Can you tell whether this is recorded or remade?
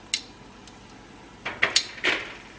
recorded